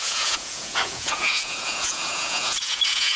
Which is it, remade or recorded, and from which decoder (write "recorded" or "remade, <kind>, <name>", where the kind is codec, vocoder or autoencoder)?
remade, vocoder, Vocos